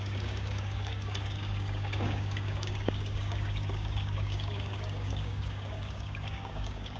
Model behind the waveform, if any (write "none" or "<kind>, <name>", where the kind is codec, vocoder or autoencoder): codec, DAC